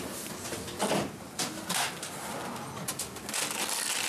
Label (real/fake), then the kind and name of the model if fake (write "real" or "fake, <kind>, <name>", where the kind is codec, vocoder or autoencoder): real